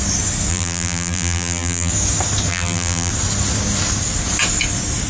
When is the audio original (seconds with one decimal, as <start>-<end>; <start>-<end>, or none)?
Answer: 0.0-0.5; 1.9-2.5; 3.1-5.1